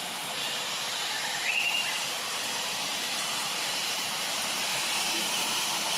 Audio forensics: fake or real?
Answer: fake